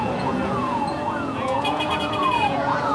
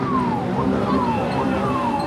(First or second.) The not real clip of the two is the first